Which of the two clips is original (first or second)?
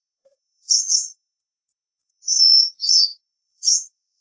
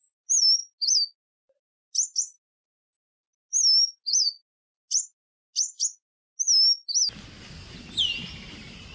second